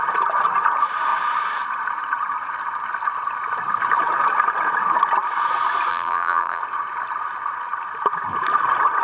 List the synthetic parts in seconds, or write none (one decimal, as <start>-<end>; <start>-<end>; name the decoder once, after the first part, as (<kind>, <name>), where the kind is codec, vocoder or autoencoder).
5.9-6.6 (vocoder, BigVGAN v2)